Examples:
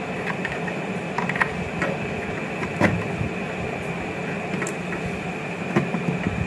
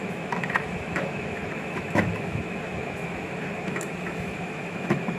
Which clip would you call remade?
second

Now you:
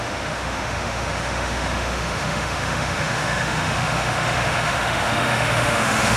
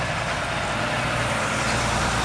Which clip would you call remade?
first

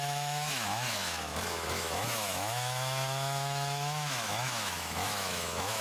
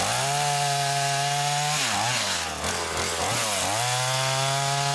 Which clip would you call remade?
first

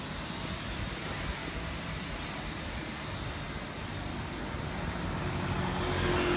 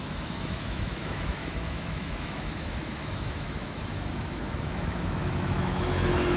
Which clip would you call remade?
second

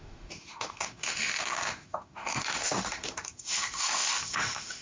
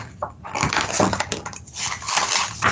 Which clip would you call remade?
first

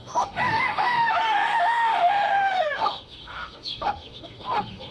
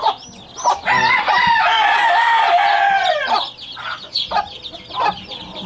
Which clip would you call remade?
first